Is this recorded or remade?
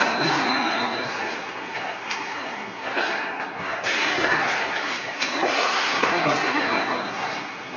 remade